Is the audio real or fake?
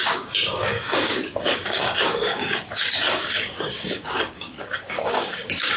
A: fake